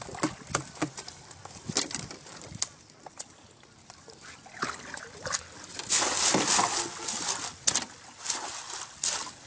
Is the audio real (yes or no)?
yes